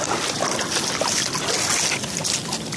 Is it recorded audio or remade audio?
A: recorded